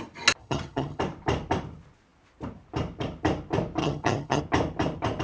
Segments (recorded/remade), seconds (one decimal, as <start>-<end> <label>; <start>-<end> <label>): 0.0-0.4 recorded; 0.4-1.0 remade; 1.0-3.8 recorded; 3.8-4.4 remade; 4.4-5.2 recorded